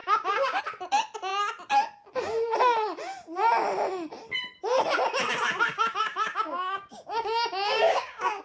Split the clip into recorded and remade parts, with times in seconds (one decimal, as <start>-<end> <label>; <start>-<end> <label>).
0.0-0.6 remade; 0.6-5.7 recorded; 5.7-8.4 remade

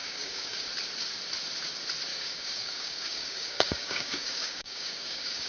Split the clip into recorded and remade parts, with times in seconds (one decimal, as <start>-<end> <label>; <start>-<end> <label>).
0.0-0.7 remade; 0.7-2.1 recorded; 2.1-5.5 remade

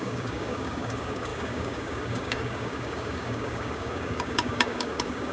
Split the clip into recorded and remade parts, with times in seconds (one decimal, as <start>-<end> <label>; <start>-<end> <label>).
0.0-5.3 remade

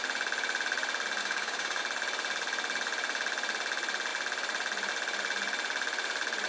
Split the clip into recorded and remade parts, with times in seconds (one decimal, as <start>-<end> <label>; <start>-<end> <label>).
0.0-1.2 recorded; 1.2-1.8 remade; 1.8-6.5 recorded